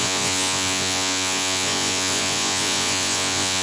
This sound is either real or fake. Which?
fake